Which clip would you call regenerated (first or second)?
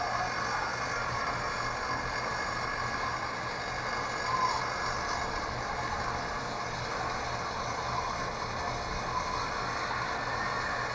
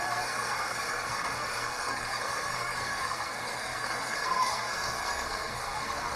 second